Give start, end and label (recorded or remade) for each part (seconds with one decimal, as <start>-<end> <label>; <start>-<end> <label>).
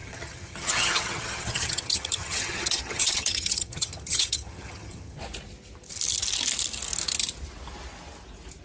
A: 0.0-5.2 remade; 5.2-8.6 recorded